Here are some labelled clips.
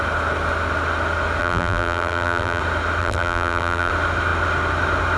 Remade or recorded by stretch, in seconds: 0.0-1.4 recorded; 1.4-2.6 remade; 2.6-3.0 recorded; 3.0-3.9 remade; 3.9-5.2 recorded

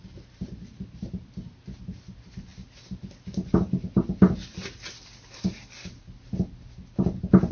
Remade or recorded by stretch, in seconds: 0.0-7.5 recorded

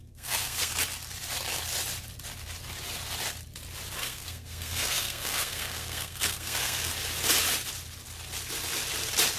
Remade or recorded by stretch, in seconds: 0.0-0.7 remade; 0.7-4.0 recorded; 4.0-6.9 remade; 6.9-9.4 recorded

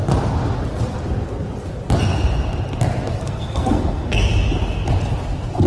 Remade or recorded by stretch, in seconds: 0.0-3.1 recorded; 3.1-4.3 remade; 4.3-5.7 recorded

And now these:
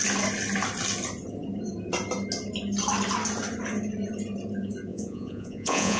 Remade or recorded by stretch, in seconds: 0.0-4.9 recorded; 4.9-6.0 remade

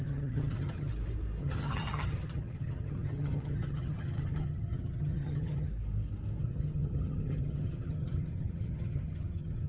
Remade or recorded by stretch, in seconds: 0.0-0.9 remade; 0.9-1.4 recorded; 1.4-5.7 remade; 5.7-6.4 recorded; 6.4-9.7 remade

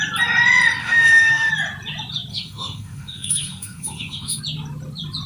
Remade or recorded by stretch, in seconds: 0.0-0.8 recorded; 0.8-1.5 remade; 1.5-2.3 recorded; 2.3-4.4 remade; 4.4-5.3 recorded